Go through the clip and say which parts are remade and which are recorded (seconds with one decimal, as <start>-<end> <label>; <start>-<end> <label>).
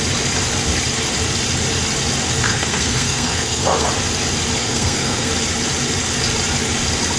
0.0-2.5 recorded; 2.5-3.9 remade; 3.9-4.6 recorded; 4.6-5.3 remade; 5.3-7.2 recorded